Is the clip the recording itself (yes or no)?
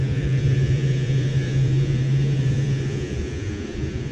no